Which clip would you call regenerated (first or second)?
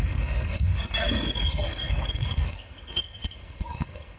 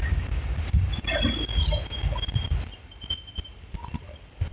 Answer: first